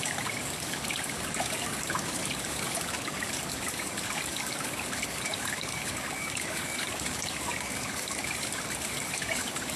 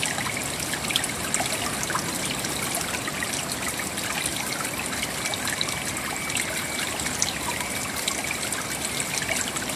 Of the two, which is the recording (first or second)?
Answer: second